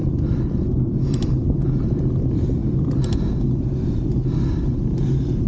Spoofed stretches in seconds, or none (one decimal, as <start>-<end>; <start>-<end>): 0.0-2.2